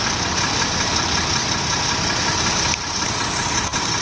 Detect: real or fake real